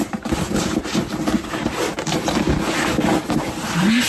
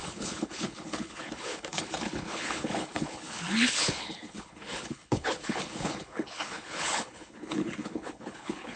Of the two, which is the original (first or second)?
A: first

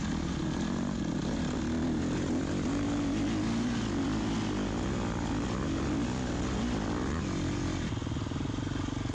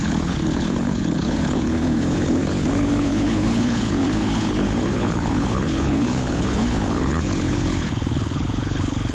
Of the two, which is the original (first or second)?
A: first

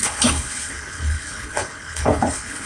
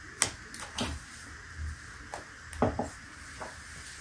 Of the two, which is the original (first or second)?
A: second